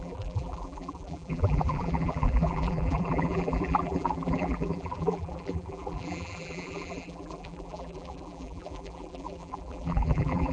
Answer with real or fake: fake